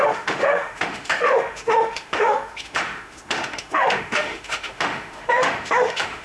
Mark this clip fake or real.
fake